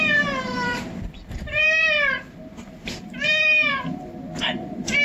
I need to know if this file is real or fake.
fake